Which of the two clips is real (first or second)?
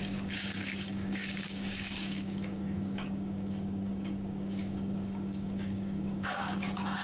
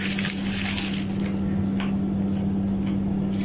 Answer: second